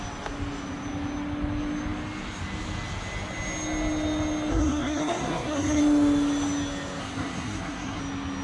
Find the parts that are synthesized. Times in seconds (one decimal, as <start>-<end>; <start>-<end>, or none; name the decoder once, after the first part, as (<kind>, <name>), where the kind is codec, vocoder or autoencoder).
4.5-5.8 (codec, SNAC); 7.0-8.0